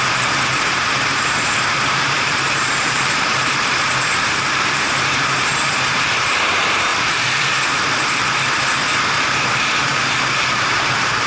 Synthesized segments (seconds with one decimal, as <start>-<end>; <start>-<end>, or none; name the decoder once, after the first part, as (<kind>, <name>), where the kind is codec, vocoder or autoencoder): 0.0-6.9 (vocoder, BigVGAN v2); 9.8-11.3